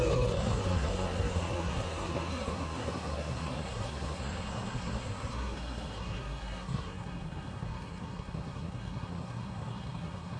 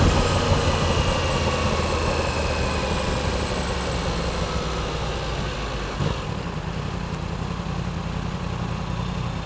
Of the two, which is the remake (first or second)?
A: first